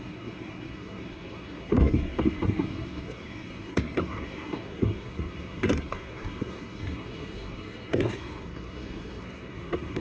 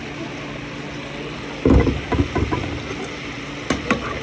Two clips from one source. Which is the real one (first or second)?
second